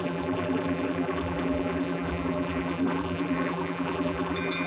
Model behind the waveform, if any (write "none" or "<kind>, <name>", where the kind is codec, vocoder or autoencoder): vocoder, BigVGAN v2